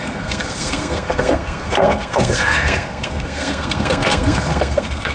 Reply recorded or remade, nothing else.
remade